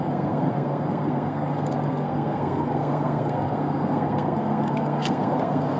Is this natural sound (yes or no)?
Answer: no